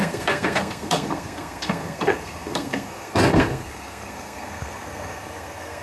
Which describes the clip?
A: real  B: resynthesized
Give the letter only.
B